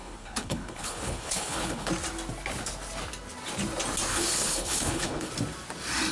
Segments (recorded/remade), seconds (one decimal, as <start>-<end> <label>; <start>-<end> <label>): 0.0-1.9 remade; 1.9-4.1 recorded; 4.1-5.3 remade; 5.3-6.1 recorded